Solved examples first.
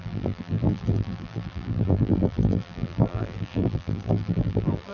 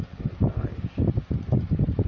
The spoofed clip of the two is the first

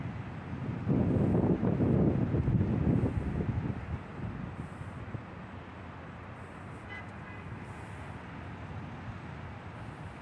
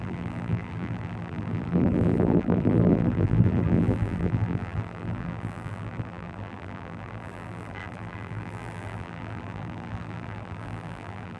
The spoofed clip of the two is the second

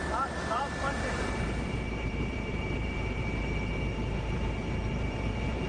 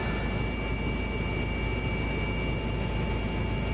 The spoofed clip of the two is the first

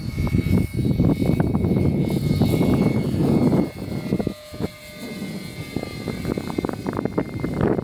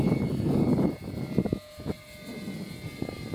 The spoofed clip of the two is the second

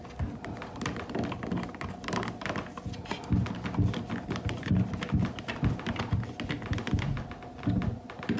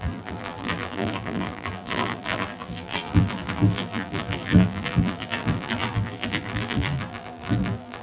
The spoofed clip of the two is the second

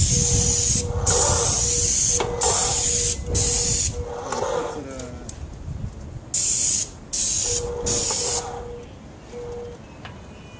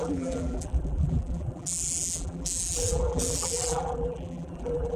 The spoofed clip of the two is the second